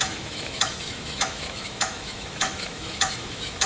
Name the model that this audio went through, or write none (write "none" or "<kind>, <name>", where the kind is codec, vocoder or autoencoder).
autoencoder, DAC-VAE